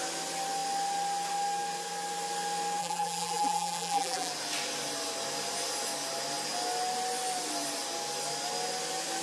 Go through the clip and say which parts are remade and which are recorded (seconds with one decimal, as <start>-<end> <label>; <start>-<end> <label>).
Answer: 0.0-2.8 recorded; 2.8-4.3 remade; 4.3-9.2 recorded